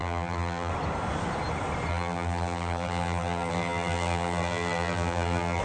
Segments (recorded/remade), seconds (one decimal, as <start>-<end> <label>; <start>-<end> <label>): 0.0-0.7 remade; 0.7-1.9 recorded; 1.9-5.6 remade